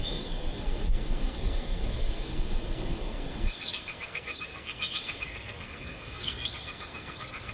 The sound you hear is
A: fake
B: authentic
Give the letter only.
A